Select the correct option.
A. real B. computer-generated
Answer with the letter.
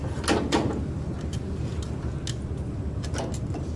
A